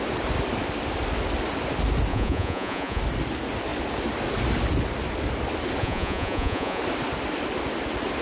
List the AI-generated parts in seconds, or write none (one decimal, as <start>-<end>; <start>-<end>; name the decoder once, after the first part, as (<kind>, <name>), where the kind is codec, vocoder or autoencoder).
2.1-3.0 (vocoder, Vocos); 5.8-6.8